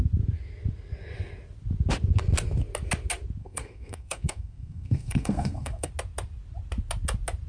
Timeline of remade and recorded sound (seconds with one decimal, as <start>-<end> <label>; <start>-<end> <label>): 0.0-3.4 recorded; 3.4-5.9 remade; 5.9-7.5 recorded